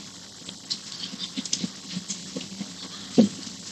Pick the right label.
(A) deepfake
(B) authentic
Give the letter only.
B